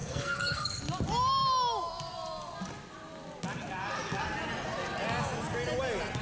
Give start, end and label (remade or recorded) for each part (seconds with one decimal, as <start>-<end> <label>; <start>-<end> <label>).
0.0-0.8 remade; 0.8-6.2 recorded